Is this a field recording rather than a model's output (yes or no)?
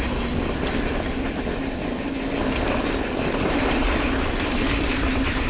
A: no